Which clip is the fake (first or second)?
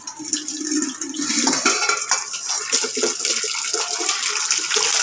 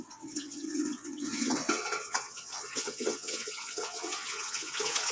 second